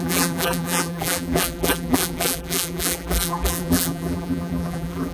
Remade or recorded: remade